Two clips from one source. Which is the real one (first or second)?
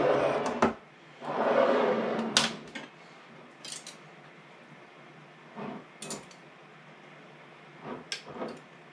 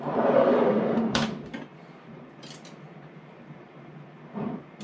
first